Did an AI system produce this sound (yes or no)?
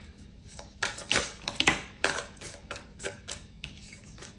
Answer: yes